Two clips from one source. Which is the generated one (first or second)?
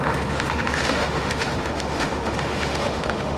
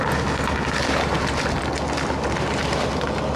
first